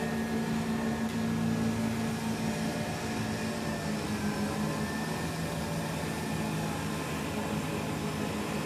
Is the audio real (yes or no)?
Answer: yes